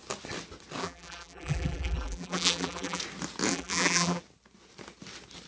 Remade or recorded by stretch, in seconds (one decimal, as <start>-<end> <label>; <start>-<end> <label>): 0.0-0.8 recorded; 0.8-3.0 remade; 3.0-3.5 recorded; 3.5-4.2 remade; 4.2-5.5 recorded